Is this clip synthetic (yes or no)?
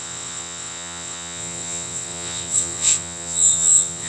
yes